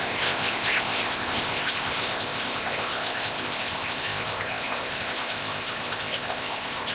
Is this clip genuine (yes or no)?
no